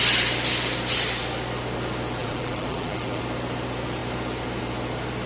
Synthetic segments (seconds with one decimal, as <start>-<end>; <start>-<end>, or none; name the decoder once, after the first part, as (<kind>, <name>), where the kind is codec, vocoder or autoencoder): 2.2-3.2 (vocoder, BigVGAN v2)